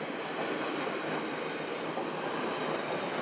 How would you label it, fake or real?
real